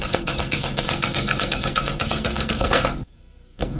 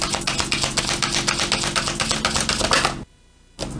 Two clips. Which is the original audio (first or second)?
second